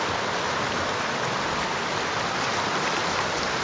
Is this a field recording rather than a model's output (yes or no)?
yes